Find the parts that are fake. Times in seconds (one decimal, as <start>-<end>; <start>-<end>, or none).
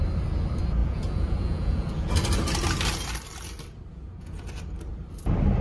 0.8-2.1; 3.9-4.5